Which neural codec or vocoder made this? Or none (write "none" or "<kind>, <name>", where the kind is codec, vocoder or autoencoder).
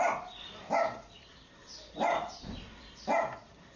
none